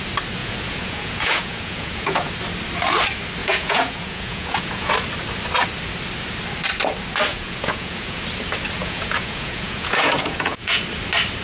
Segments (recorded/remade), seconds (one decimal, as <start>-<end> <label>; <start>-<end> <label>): 0.0-0.4 recorded; 0.4-2.3 remade; 2.3-3.4 recorded; 3.4-4.9 remade; 4.9-7.3 recorded; 7.3-8.2 remade; 8.2-8.8 recorded; 8.8-10.8 remade; 10.8-11.4 recorded